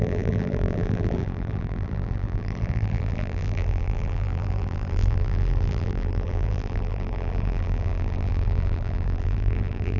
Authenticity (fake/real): fake